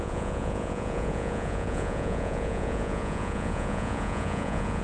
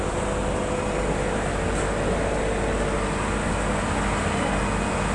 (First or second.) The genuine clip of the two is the second